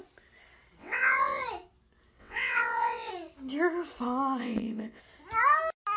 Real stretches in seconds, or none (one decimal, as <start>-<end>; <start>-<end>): 0.0-0.8; 1.4-2.2; 3.1-4.4; 5.0-6.0